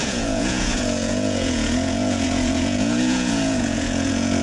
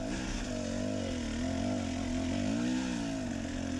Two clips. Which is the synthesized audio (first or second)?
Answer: first